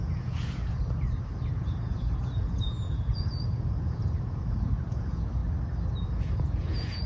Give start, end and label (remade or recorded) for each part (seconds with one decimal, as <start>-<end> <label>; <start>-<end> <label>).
0.0-0.8 remade; 0.8-1.5 recorded; 1.5-5.4 remade; 5.4-6.2 recorded; 6.2-7.1 remade